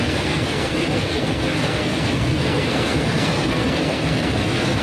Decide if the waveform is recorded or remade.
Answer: remade